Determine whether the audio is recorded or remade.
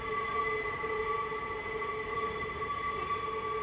recorded